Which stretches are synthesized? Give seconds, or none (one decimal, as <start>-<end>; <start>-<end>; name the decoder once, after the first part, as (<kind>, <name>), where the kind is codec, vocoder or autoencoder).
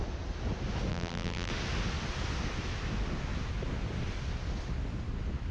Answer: 0.9-1.5 (vocoder, BigVGAN v2)